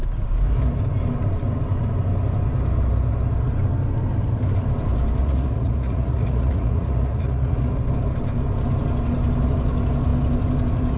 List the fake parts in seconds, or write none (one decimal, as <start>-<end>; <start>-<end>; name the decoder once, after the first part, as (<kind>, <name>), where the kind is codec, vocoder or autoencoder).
5.2-7.8 (vocoder, Vocos)